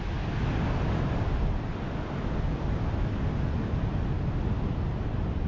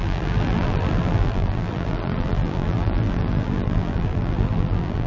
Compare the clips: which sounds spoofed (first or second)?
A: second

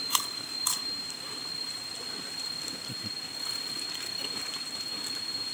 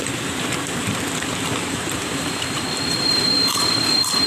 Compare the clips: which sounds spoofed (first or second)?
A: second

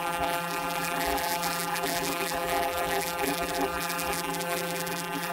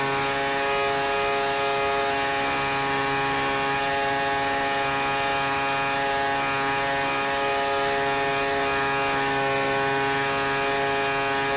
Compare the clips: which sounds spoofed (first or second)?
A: first